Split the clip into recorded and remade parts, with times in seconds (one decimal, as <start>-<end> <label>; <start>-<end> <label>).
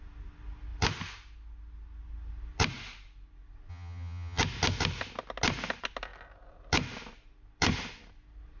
0.0-3.7 recorded; 3.7-4.4 remade; 4.4-8.6 recorded